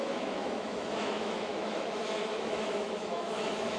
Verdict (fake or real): fake